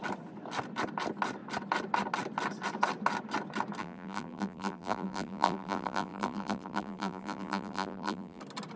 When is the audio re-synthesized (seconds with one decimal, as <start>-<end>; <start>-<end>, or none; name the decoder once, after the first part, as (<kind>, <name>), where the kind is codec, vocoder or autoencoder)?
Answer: 3.8-8.4 (vocoder, BigVGAN v2)